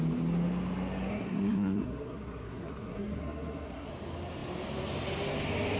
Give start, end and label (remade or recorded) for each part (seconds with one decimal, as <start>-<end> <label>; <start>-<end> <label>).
0.0-1.1 recorded; 1.1-3.9 remade; 3.9-5.8 recorded